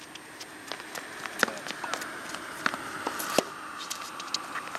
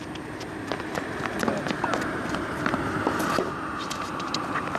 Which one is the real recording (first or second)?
first